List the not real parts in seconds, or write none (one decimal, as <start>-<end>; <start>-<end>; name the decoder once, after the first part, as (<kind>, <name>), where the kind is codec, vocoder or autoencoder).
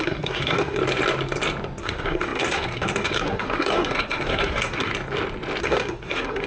0.0-0.8 (codec, SNAC); 1.8-4.9; 5.6-6.5